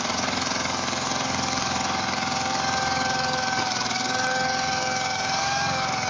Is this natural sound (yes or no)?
no